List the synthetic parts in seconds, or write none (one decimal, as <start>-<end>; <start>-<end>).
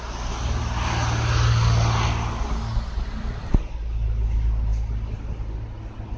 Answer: none